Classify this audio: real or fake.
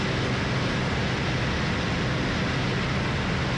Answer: real